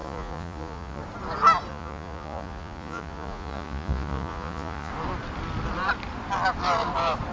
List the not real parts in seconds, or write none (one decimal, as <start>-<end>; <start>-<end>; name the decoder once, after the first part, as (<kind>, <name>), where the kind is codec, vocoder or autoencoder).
0.0-1.0 (vocoder, Vocos); 1.7-4.9